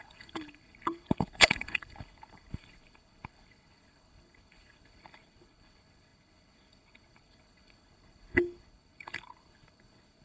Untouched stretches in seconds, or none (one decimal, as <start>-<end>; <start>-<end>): none